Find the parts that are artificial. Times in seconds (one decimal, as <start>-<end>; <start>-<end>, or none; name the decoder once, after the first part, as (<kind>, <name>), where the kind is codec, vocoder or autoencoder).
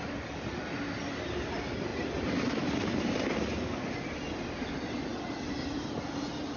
none